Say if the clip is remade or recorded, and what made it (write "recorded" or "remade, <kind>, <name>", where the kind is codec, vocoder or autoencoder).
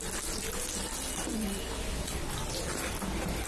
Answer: recorded